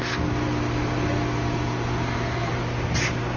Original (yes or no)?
yes